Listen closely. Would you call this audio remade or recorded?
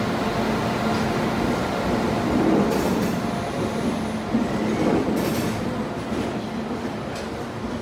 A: recorded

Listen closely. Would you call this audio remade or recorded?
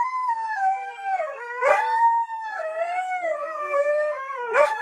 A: remade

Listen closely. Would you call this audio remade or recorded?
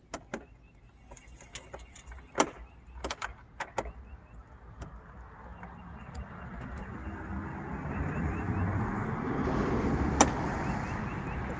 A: recorded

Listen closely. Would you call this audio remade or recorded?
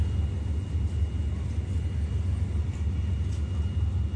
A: recorded